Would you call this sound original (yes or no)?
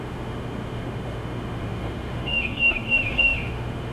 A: no